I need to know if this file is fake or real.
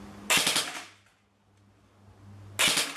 real